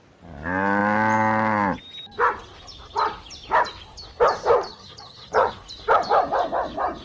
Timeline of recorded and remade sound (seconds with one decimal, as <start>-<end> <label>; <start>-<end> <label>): 0.0-4.7 recorded; 4.7-5.5 remade; 5.5-7.0 recorded